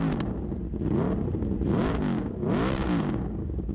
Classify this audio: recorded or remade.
recorded